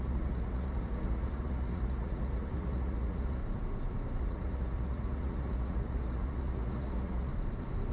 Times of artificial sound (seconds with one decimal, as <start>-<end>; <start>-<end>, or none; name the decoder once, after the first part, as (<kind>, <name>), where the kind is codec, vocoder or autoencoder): 0.0-3.4 (vocoder, Vocos); 4.2-7.3